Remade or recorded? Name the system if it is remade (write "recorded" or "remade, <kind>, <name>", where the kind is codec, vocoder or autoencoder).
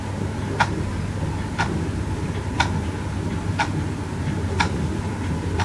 recorded